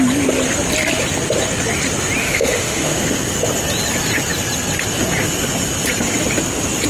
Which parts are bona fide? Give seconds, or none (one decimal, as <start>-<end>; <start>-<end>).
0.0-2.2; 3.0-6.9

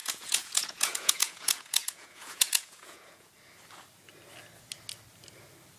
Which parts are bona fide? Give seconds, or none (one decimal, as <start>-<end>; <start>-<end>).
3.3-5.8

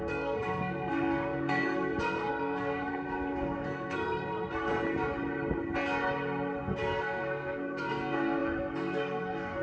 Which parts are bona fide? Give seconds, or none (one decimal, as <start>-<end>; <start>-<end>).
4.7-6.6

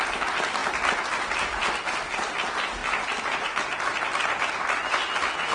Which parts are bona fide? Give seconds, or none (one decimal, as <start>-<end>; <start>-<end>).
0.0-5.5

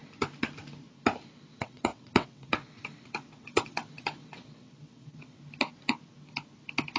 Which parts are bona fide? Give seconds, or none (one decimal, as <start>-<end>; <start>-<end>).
0.0-1.5; 5.4-7.0

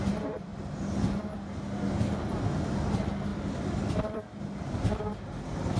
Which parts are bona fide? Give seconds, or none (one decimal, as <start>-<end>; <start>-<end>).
0.0-3.3; 5.0-5.8